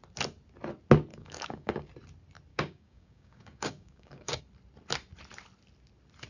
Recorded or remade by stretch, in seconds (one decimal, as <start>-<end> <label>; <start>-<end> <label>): 0.0-1.1 recorded; 1.1-1.9 remade; 1.9-2.5 recorded; 2.5-4.4 remade; 4.4-6.3 recorded